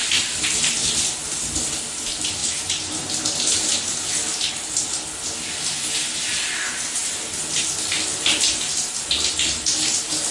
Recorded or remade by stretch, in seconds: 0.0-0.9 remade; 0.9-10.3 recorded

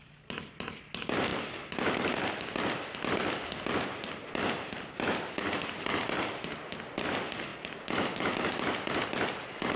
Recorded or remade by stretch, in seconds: 0.0-9.8 recorded